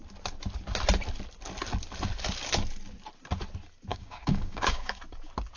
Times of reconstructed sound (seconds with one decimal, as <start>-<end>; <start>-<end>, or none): 3.9-5.0